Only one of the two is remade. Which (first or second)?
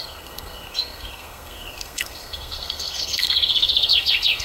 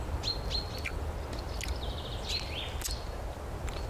first